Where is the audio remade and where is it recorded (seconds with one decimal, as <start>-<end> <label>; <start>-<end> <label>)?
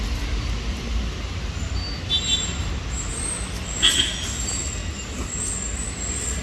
0.0-6.4 recorded